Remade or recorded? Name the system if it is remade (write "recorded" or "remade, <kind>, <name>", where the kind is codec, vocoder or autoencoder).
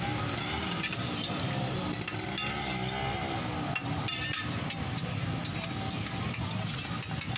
recorded